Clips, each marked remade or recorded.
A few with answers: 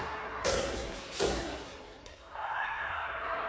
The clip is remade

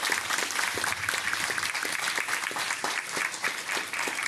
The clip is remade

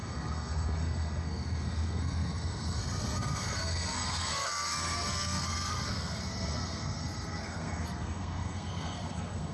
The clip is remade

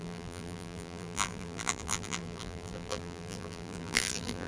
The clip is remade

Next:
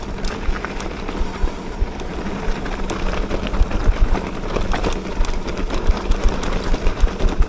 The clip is recorded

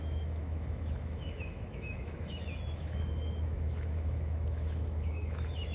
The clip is remade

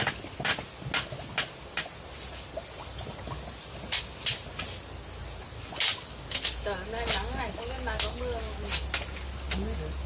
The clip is recorded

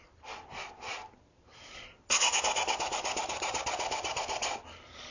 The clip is recorded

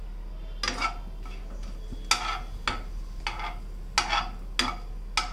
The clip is recorded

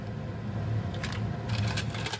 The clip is recorded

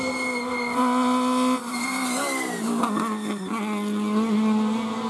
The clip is recorded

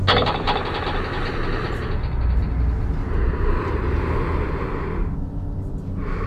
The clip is recorded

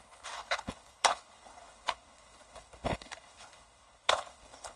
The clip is remade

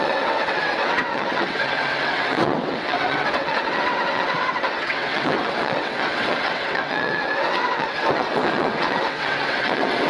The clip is remade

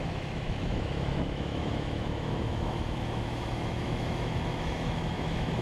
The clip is remade